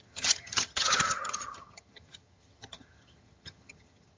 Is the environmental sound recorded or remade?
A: remade